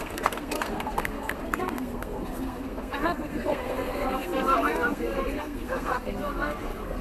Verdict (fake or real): fake